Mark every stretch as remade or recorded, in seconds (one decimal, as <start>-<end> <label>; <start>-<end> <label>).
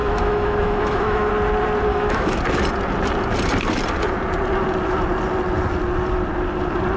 0.0-1.3 remade; 1.3-1.9 recorded; 1.9-2.4 remade; 2.4-7.0 recorded